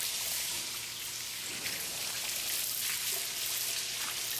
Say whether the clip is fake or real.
real